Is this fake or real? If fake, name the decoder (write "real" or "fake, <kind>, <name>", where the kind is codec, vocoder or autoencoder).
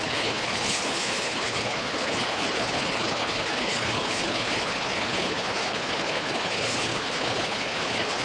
fake, codec, HILCodec